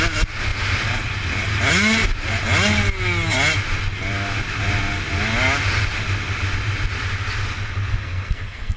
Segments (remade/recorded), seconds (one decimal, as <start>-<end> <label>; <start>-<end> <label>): 0.0-7.9 recorded; 7.9-8.8 remade